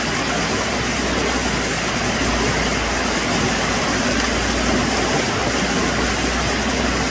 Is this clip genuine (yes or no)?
yes